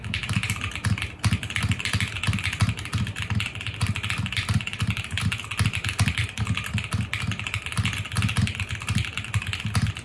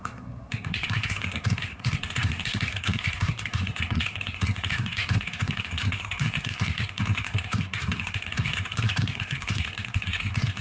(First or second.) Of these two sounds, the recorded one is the first